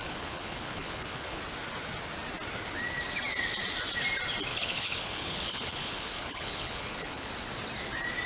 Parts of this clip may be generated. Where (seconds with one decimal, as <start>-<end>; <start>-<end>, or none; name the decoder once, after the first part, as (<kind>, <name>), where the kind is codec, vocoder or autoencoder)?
0.0-1.4 (codec, HILCodec); 4.5-7.3